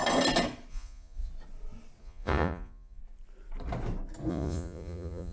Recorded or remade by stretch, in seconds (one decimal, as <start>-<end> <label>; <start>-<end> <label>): 0.0-0.7 recorded; 0.7-1.3 remade; 1.3-2.0 recorded; 2.0-3.0 remade; 3.0-4.3 recorded; 4.3-5.3 remade